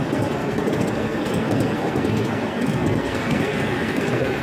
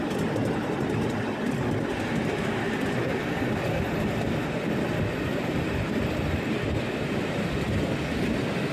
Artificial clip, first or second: first